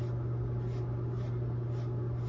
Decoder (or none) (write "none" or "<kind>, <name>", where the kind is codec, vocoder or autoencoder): none